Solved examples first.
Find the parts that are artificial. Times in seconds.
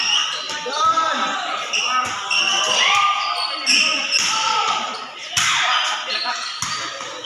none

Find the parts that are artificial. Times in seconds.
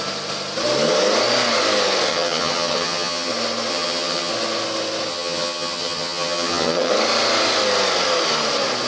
2.1-3.3 (vocoder, HiFi-GAN); 3.7-4.3; 5.1-6.9